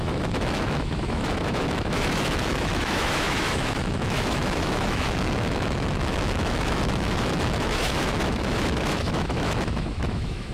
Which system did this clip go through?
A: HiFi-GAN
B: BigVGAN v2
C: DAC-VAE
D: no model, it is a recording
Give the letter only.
C